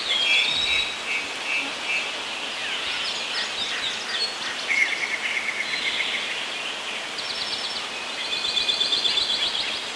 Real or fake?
real